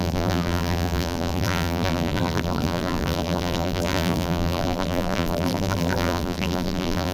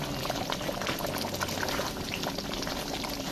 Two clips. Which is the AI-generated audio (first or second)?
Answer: first